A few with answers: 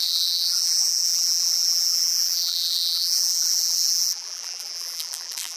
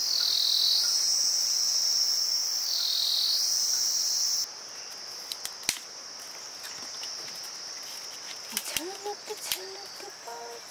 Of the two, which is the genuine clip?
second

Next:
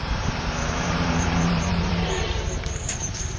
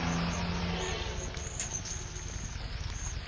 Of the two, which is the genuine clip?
second